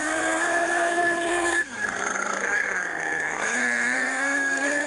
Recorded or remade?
remade